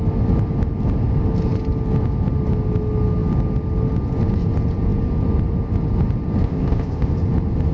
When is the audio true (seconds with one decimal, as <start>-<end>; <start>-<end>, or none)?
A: 0.0-6.4; 7.1-7.7